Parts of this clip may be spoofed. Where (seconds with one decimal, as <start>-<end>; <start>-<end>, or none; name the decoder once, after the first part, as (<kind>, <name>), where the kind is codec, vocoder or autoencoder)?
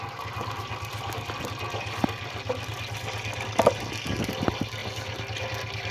none